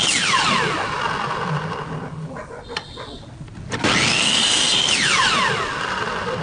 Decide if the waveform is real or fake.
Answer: real